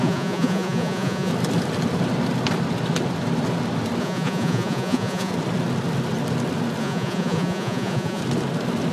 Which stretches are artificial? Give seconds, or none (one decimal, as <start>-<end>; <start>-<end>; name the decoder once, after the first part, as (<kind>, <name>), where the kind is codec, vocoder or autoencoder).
0.0-1.3 (vocoder, Vocos); 4.0-5.3; 6.8-8.2